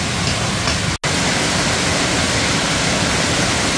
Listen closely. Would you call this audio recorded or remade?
recorded